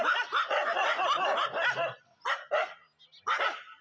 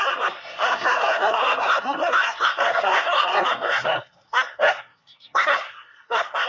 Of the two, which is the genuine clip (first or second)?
first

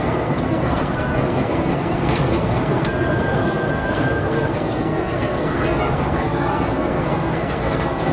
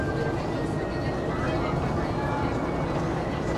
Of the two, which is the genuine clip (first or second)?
second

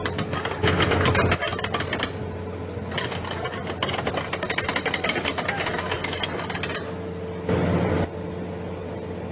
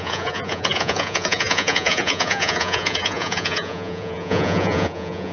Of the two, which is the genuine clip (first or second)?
first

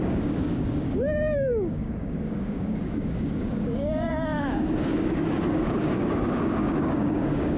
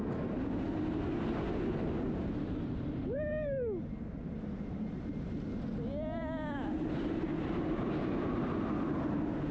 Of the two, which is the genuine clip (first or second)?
second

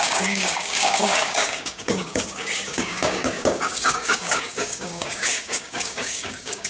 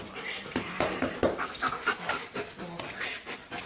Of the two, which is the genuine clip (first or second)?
second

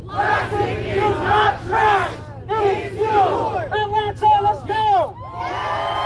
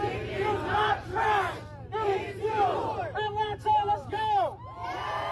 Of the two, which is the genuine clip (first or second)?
first